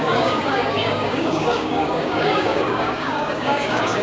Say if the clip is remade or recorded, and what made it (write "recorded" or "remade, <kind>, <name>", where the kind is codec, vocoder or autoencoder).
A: remade, codec, DAC